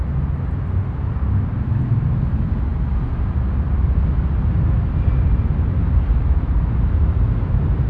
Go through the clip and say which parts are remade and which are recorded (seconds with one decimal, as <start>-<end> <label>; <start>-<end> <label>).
0.0-7.9 recorded